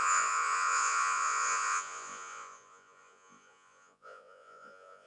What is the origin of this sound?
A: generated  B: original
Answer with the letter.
A